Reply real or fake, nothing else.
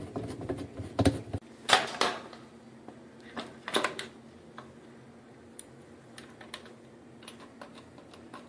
real